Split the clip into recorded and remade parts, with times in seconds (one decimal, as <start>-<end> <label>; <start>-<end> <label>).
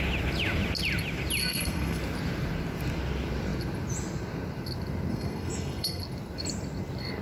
0.0-1.4 recorded; 1.4-2.0 remade; 2.0-5.1 recorded; 5.1-6.0 remade; 6.0-7.2 recorded